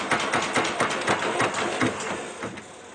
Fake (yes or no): no